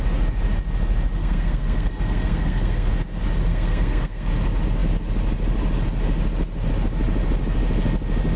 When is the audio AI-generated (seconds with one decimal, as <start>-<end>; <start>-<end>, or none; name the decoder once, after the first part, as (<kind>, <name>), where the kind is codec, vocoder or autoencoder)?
1.2-2.9 (codec, SNAC); 3.5-4.3